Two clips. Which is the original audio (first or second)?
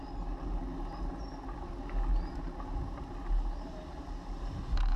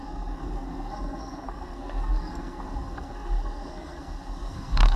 first